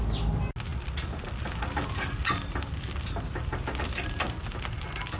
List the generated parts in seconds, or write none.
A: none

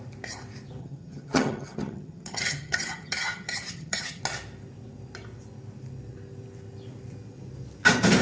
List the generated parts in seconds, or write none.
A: 0.8-4.2 (vocoder, HiFi-GAN)

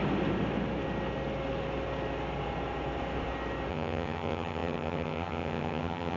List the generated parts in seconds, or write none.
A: 3.7-6.2 (vocoder, HiFi-GAN)

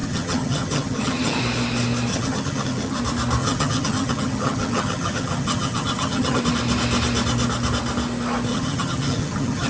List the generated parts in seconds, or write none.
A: 0.0-1.4 (vocoder, HiFi-GAN); 2.1-3.0; 3.4-6.4; 8.5-9.7

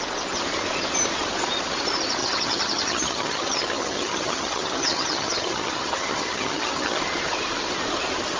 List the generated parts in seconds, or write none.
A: 2.2-7.0 (vocoder, HiFi-GAN)